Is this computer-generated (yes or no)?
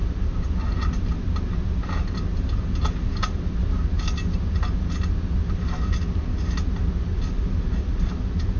no